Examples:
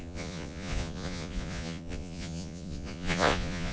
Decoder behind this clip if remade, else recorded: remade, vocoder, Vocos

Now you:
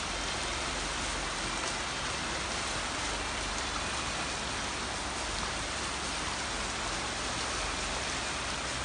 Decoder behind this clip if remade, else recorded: recorded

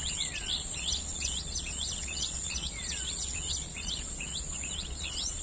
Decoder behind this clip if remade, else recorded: remade, vocoder, Vocos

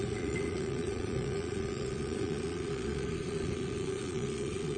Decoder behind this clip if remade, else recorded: remade, vocoder, Vocos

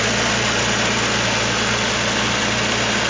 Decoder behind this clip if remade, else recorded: recorded